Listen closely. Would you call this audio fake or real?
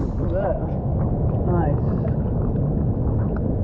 real